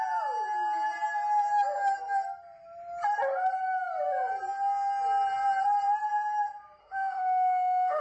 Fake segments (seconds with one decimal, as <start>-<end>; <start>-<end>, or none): 6.8-8.0